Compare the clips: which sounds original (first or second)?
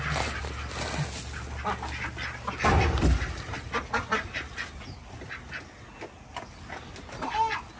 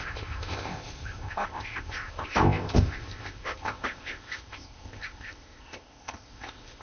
first